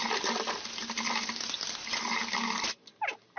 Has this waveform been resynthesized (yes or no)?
no